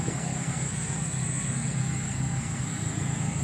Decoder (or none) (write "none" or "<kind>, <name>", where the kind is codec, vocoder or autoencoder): codec, SNAC